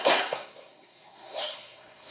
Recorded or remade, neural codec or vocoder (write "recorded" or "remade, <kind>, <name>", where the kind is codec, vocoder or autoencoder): remade, codec, SNAC